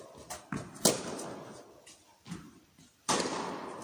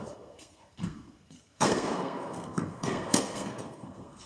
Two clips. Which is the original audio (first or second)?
first